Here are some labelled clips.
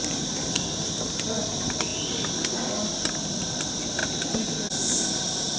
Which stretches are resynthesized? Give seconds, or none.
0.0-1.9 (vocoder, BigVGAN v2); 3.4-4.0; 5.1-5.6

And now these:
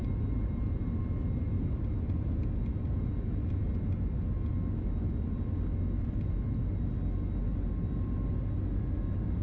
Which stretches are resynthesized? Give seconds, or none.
0.0-1.0 (vocoder, BigVGAN v2)

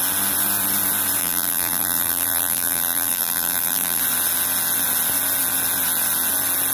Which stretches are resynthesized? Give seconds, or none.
1.2-4.0 (vocoder, BigVGAN v2)